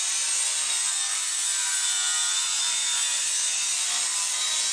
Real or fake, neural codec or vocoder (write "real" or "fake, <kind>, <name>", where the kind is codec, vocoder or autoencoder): fake, vocoder, BigVGAN v2